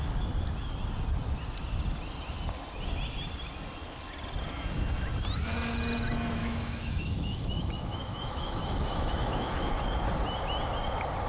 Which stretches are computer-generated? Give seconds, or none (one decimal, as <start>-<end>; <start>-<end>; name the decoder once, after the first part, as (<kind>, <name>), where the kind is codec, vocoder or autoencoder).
6.4-9.7 (autoencoder, DAC-VAE)